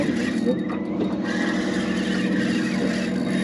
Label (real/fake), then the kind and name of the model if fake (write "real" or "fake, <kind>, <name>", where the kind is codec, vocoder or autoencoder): real